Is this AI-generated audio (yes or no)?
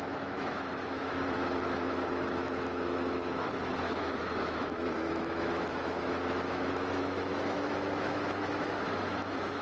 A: yes